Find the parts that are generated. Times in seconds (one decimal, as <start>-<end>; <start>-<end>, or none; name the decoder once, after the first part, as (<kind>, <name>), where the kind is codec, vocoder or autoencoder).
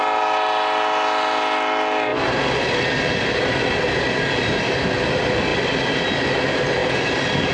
2.1-3.4 (vocoder, BigVGAN v2); 6.8-7.5